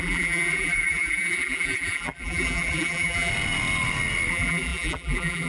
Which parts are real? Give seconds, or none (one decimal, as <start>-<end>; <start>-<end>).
3.3-4.3